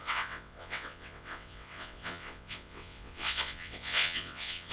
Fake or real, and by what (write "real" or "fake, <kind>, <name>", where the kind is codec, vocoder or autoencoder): fake, vocoder, WaveNeXt